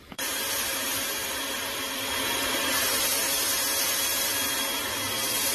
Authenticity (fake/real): fake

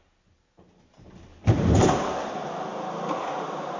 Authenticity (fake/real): real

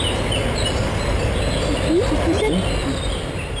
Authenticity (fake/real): real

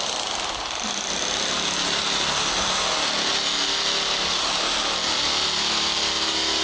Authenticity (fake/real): real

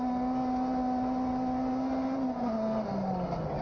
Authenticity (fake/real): real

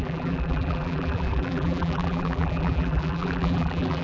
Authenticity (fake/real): fake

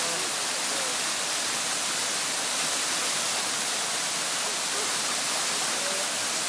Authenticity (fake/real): real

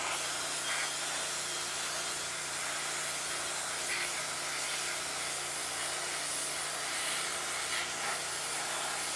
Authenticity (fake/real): real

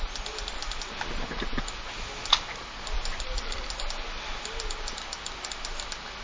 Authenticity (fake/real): real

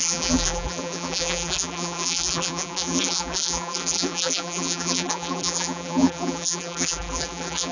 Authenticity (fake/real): fake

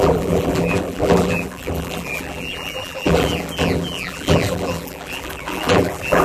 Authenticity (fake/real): fake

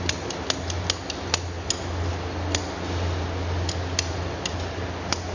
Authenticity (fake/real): real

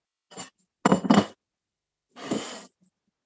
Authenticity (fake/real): real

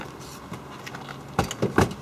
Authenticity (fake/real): real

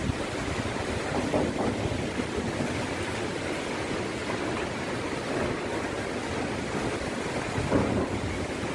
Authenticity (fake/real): real